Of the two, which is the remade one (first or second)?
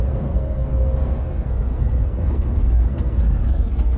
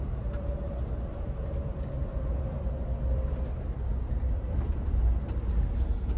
first